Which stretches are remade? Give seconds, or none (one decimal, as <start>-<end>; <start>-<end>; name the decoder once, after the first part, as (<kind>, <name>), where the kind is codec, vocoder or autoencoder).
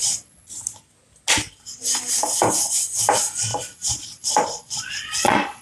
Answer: 0.0-0.8 (vocoder, Vocos); 3.5-5.6